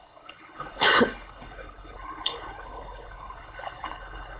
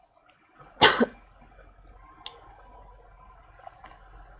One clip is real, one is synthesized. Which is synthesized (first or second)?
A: first